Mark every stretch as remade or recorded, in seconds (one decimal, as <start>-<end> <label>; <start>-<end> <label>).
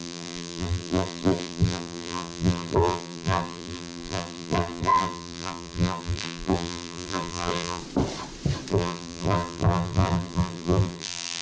0.0-7.8 remade; 7.8-8.7 recorded; 8.7-11.4 remade